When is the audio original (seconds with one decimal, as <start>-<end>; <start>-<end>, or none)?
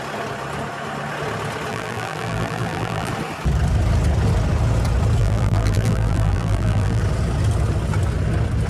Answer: 0.0-1.7; 3.1-5.2; 7.0-8.7